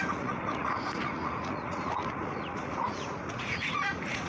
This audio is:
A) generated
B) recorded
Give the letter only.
A